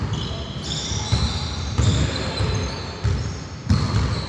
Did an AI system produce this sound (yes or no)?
no